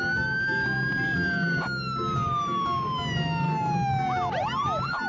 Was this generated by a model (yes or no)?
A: no